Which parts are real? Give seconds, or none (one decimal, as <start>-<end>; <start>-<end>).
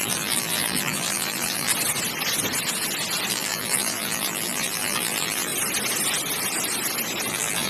1.7-3.3; 5.5-7.3